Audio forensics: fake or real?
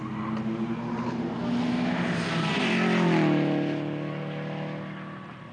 real